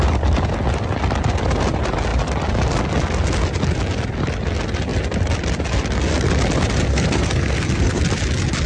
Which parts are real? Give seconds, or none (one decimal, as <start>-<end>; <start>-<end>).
0.0-6.9; 8.0-8.7